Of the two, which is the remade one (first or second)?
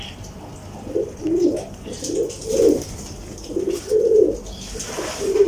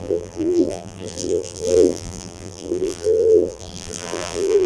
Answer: second